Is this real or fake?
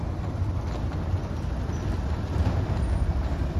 real